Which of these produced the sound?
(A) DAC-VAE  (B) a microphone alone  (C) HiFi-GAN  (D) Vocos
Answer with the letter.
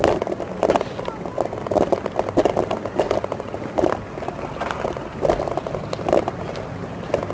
B